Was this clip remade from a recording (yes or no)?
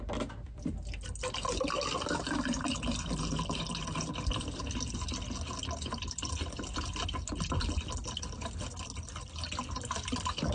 no